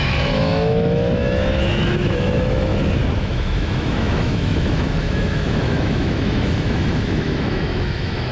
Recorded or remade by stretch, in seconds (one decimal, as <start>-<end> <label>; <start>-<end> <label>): 0.0-2.7 remade; 2.7-3.2 recorded; 3.2-8.3 remade

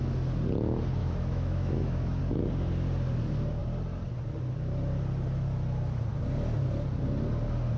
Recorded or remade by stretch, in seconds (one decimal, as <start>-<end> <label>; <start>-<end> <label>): 0.0-1.0 recorded; 1.0-2.2 remade; 2.2-7.8 recorded